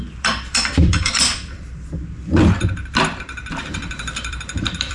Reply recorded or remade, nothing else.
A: remade